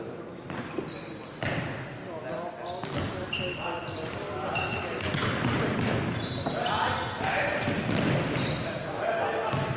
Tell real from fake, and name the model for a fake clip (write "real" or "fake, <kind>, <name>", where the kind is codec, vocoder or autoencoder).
real